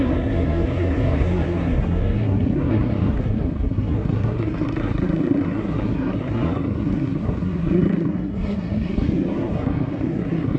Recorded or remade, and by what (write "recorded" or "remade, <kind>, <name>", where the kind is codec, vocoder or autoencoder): remade, codec, SNAC